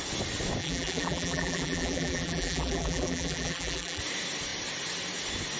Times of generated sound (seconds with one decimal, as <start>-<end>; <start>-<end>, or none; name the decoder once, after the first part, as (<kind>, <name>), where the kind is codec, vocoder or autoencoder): 0.6-4.0 (vocoder, BigVGAN v2)